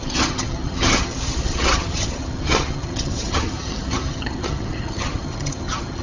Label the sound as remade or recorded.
remade